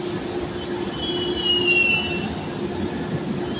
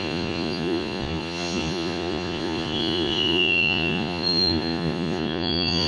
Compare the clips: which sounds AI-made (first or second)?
second